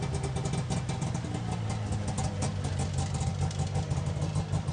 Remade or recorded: recorded